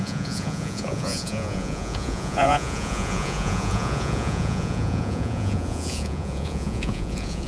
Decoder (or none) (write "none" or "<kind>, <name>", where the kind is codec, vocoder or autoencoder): vocoder, Vocos